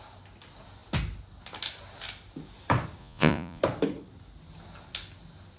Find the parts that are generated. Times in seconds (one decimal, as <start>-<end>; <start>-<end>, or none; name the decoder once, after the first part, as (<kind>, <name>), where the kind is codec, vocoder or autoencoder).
3.0-3.6 (vocoder, Vocos)